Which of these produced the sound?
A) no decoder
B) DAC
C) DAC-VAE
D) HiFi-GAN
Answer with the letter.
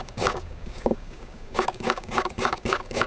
B